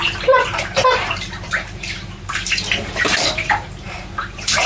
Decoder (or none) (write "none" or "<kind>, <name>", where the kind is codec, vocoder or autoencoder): vocoder, BigVGAN v2